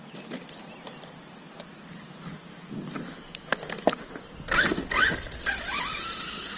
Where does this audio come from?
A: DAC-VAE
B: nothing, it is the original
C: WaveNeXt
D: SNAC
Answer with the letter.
B